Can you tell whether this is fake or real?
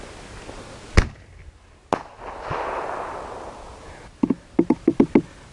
real